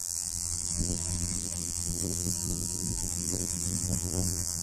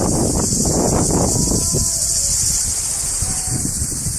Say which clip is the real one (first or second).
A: second